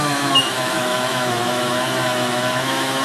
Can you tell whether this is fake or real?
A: fake